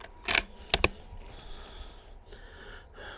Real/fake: real